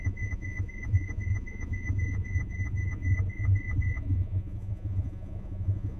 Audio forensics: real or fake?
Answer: fake